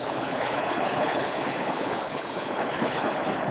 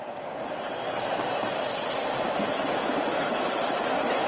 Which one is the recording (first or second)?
second